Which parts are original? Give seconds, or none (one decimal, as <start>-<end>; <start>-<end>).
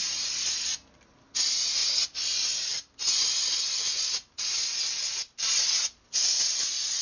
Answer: 0.0-7.0